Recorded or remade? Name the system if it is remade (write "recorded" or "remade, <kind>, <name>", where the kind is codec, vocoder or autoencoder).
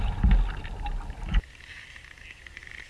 recorded